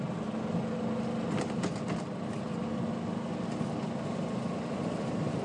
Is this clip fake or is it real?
real